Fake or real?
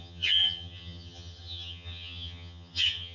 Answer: fake